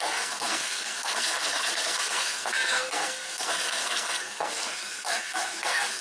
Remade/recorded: remade